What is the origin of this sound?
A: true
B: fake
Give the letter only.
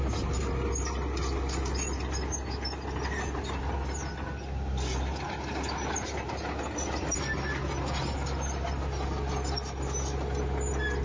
A